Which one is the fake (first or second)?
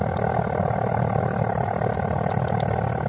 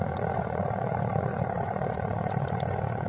second